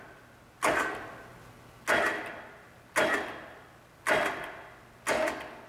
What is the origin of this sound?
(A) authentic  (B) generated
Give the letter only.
A